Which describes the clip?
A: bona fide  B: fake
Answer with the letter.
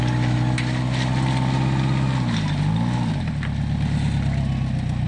A